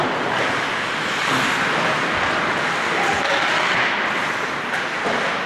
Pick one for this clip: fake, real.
real